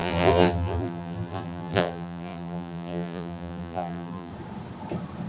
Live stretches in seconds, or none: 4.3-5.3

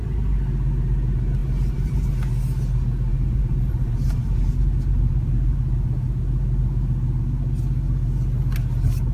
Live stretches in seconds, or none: 0.0-1.4; 2.1-3.1; 4.5-9.1